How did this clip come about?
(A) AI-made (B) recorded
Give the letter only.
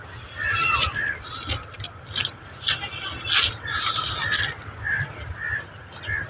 B